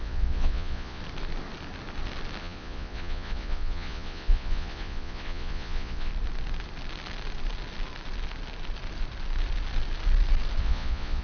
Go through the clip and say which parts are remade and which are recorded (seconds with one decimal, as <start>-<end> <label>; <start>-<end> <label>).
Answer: 0.0-1.0 remade; 1.0-2.4 recorded; 2.4-6.1 remade; 6.1-10.6 recorded; 10.6-11.2 remade